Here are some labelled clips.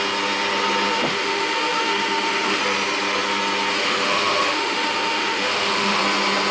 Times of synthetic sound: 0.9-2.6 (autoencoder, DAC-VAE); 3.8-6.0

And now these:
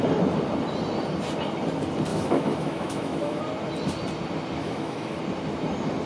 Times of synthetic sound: 2.1-3.4 (autoencoder, DAC-VAE); 4.6-5.2

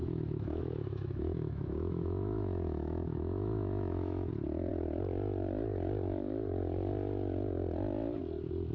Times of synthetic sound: 0.0-4.3 (autoencoder, DAC-VAE)

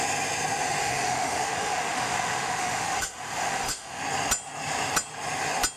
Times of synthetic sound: 0.8-4.0 (autoencoder, DAC-VAE)

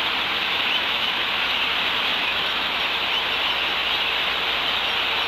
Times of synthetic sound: 0.4-1.3 (autoencoder, DAC-VAE); 2.1-2.8

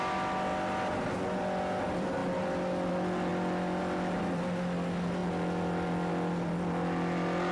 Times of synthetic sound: none